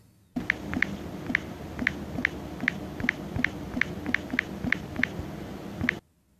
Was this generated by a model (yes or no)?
no